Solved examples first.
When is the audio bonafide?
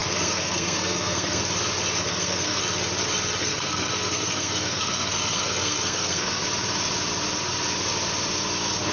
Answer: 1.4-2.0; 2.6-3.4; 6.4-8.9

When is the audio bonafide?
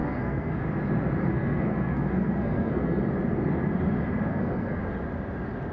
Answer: 0.6-1.3; 3.0-4.3; 4.8-5.7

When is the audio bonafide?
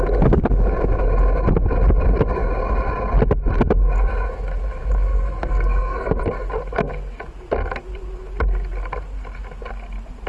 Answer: 0.0-5.1; 6.2-10.3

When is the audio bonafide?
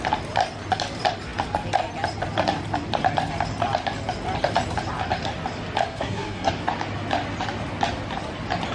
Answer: 0.0-5.9; 6.5-8.7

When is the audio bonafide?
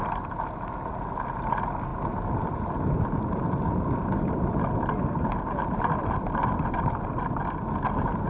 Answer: 0.0-8.3